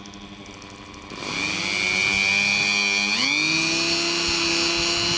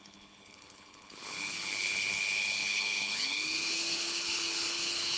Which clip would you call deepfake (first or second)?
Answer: second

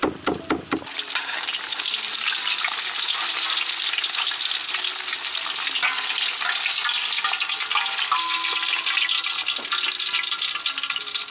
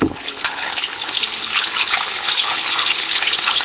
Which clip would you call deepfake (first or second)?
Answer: second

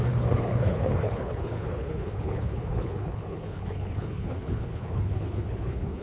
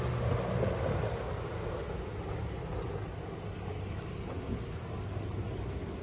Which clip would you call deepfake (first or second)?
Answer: first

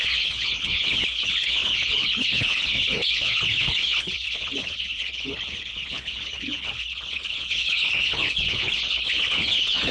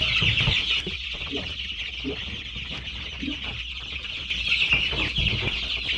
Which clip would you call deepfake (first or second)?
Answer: first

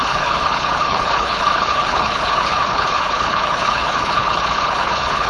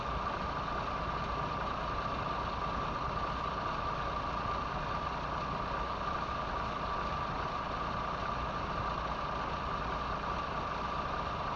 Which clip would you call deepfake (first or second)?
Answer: first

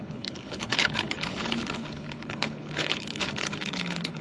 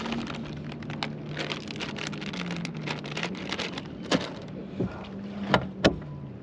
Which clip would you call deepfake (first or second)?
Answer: first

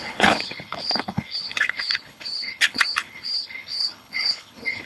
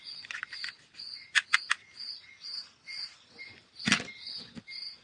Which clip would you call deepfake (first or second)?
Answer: first